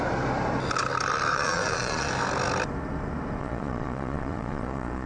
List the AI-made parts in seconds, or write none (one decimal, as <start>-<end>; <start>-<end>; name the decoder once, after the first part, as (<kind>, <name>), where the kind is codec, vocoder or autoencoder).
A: 1.3-2.1 (vocoder, Vocos); 3.4-5.1